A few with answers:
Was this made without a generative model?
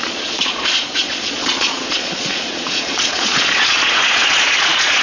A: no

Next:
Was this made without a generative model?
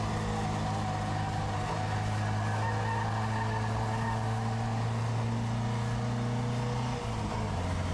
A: yes